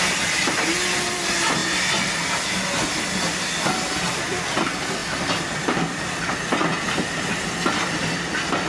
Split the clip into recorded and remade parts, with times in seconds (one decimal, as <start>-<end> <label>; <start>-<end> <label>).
0.0-8.7 recorded